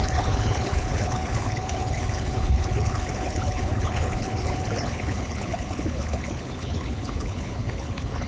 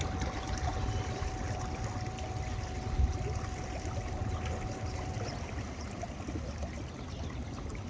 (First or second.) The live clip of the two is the second